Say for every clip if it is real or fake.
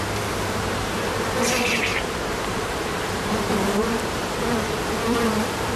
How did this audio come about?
fake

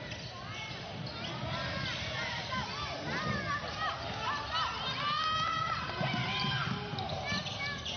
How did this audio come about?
real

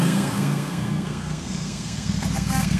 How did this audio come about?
fake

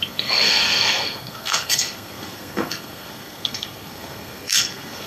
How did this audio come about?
fake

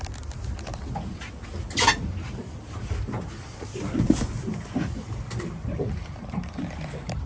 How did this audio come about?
real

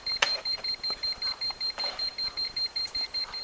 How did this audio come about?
fake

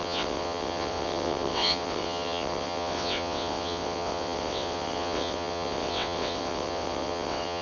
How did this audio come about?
fake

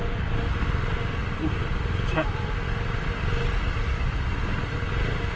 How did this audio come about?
real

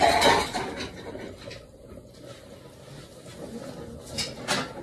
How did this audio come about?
real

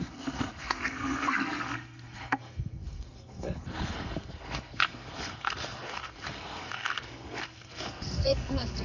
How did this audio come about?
fake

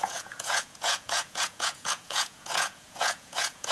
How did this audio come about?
fake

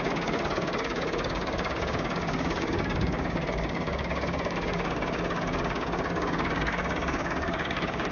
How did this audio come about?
fake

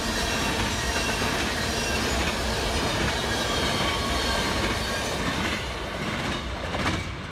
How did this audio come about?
real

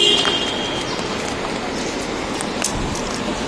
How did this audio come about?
real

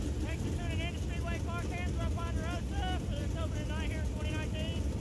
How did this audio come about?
real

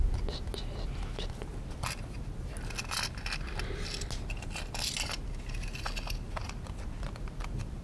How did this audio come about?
real